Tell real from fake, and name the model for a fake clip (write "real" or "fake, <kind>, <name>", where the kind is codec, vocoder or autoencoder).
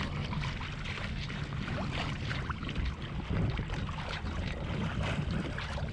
real